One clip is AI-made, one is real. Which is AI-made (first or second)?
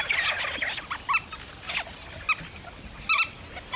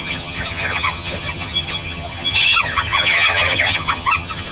second